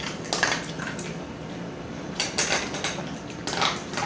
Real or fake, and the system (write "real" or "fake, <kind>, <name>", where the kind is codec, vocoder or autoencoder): real